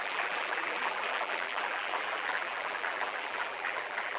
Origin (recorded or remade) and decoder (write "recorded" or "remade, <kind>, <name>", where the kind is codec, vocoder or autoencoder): remade, vocoder, BigVGAN v2